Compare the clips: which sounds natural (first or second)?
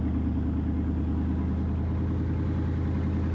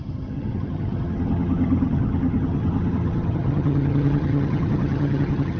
first